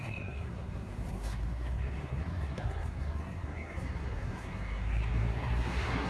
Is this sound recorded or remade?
remade